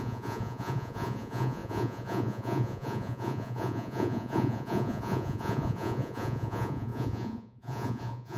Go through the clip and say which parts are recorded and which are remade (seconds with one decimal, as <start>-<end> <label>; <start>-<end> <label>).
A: 0.0-8.4 remade